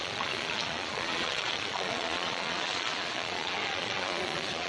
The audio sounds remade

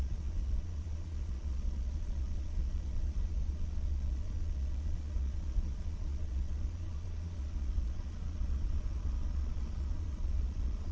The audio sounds remade